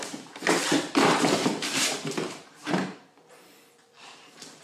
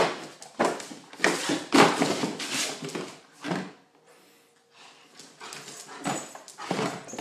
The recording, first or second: second